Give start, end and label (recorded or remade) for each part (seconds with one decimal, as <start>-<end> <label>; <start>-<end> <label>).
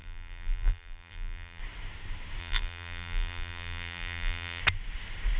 0.0-1.6 remade; 1.6-2.4 recorded; 2.4-4.6 remade; 4.6-5.4 recorded